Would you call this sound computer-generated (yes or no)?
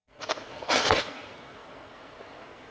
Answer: yes